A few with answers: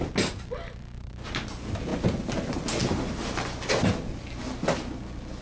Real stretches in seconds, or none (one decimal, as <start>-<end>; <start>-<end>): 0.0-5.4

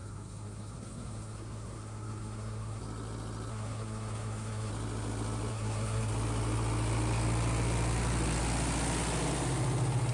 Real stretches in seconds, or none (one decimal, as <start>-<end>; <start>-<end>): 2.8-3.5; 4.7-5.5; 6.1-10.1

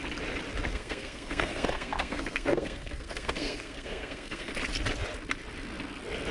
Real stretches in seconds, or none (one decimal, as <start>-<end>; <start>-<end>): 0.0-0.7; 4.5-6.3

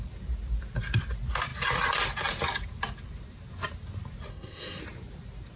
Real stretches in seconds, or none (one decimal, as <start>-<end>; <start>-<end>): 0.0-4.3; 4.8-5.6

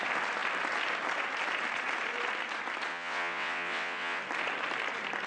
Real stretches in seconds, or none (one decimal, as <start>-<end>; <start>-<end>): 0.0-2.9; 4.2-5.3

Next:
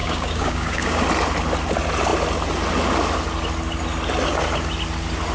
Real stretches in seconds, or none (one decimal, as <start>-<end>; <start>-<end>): 1.0-5.3

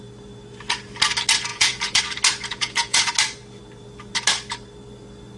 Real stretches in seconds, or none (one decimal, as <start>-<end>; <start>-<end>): 0.0-1.5; 2.0-2.5; 3.1-5.4